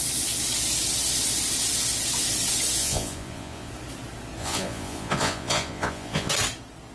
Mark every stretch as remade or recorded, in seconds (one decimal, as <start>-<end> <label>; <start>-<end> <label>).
0.0-2.8 recorded; 2.8-3.7 remade; 3.7-4.4 recorded; 4.4-6.3 remade; 6.3-6.9 recorded